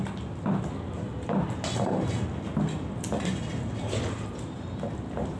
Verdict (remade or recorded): recorded